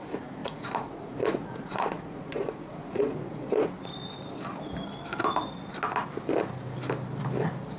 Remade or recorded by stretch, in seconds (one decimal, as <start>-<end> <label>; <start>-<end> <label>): 0.0-0.4 recorded; 0.4-3.7 remade; 3.7-7.8 recorded